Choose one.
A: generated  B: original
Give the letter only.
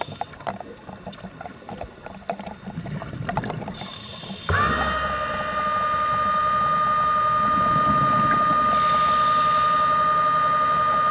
B